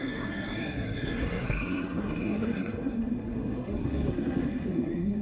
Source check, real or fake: fake